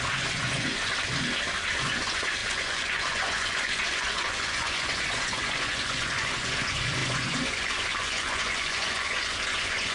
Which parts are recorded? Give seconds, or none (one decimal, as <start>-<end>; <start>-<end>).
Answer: 0.9-1.7